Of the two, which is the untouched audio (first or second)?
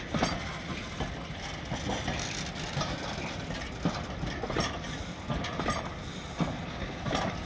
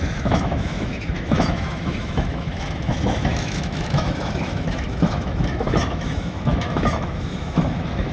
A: first